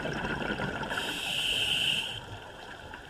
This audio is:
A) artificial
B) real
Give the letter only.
A